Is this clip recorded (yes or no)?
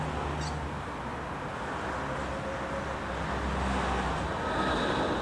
yes